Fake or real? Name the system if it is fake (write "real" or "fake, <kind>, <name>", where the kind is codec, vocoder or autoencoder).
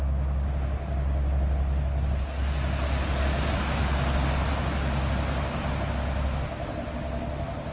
real